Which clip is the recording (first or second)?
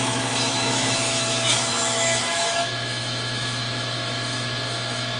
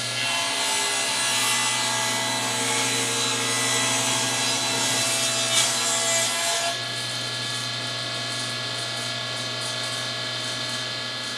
second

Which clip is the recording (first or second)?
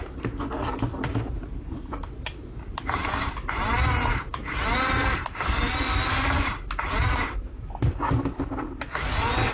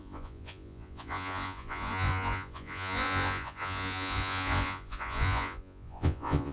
first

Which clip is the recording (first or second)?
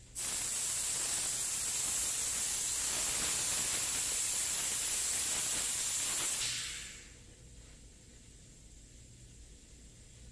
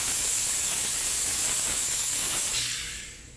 first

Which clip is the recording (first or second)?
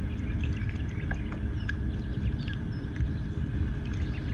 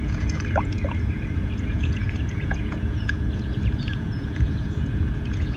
first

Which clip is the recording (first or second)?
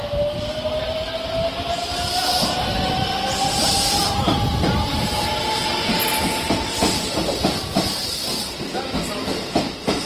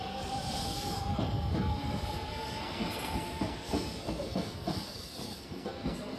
first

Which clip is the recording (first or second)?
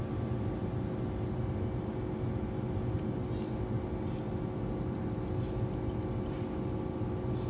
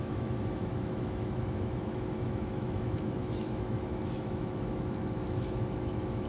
first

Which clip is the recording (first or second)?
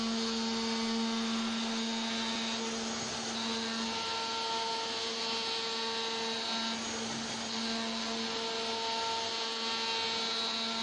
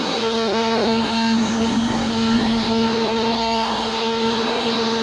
first